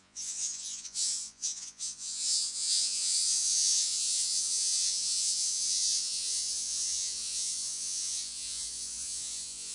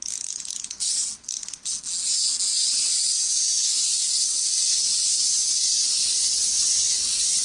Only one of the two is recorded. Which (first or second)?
second